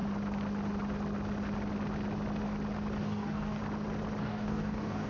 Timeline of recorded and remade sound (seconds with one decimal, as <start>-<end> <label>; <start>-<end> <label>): 0.0-3.0 recorded; 3.0-3.6 remade; 3.6-4.2 recorded; 4.2-5.1 remade